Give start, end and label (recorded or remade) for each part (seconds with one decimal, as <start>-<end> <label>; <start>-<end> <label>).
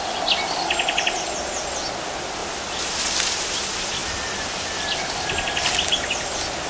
0.0-6.7 recorded